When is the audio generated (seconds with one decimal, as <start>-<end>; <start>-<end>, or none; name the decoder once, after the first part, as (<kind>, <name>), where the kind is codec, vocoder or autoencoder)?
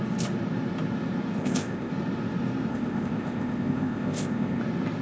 1.4-1.9 (codec, ZipCodec); 2.7-4.6